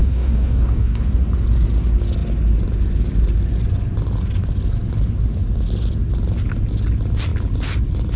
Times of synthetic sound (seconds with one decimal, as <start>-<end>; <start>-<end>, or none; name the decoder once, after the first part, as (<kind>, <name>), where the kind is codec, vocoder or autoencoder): 0.0-1.1 (codec, DAC)